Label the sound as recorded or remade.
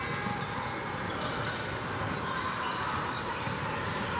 recorded